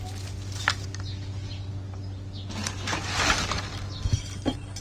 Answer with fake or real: real